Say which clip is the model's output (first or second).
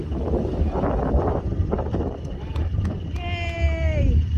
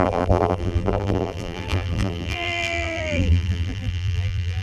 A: second